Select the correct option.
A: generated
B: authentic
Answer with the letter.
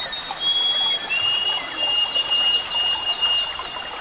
B